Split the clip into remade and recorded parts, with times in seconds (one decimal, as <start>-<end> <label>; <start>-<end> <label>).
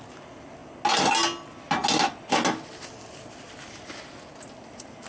0.0-5.1 recorded